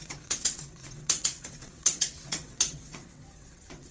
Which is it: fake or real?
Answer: fake